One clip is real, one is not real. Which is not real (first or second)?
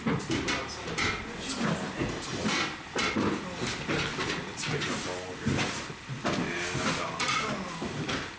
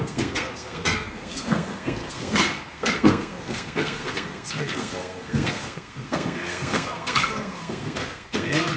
second